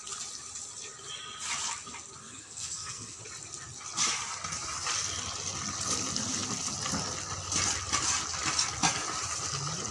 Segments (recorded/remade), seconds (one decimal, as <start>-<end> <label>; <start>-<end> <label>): 0.0-2.2 recorded; 2.2-3.2 remade; 3.2-9.9 recorded